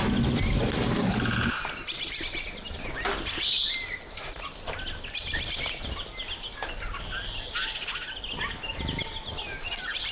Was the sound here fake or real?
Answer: real